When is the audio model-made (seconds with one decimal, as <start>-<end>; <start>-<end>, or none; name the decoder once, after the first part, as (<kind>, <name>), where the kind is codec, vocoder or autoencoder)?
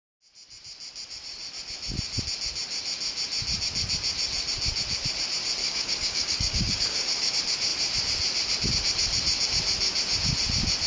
5.6-7.3 (codec, DAC)